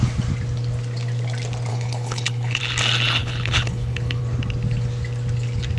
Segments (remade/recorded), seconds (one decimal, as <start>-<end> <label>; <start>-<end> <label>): 0.0-1.7 recorded; 1.7-2.6 remade; 2.6-3.2 recorded; 3.2-4.2 remade; 4.2-5.8 recorded

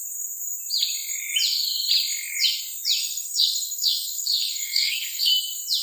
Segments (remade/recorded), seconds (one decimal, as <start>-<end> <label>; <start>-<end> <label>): 0.0-3.0 recorded; 3.0-5.3 remade; 5.3-5.8 recorded

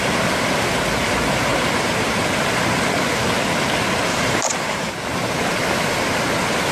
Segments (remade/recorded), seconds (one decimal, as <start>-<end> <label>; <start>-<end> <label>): 0.0-4.1 recorded; 4.1-4.9 remade; 4.9-6.7 recorded

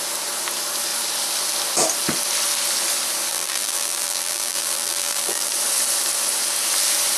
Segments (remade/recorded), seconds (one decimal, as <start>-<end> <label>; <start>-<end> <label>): 0.0-3.3 recorded; 3.3-5.5 remade; 5.5-7.2 recorded

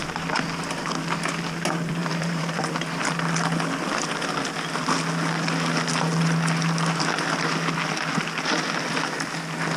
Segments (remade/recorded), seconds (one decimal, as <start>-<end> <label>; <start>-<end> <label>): 0.0-2.0 recorded; 2.0-2.5 remade; 2.5-9.8 recorded

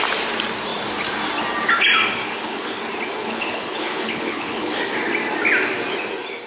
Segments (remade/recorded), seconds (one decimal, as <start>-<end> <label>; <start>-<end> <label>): 0.0-2.2 recorded; 2.2-2.8 remade; 2.8-3.2 recorded; 3.2-4.8 remade; 4.8-6.5 recorded

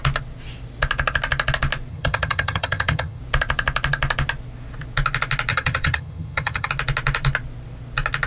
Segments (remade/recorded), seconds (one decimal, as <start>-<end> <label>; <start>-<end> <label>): 0.0-1.9 recorded; 1.9-3.2 remade; 3.2-5.5 recorded; 5.5-6.7 remade; 6.7-8.3 recorded